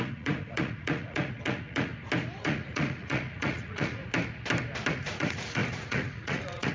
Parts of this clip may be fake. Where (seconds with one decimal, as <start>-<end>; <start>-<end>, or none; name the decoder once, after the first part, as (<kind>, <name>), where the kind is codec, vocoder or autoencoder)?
0.0-1.9 (vocoder, Vocos); 2.4-4.0; 4.9-6.7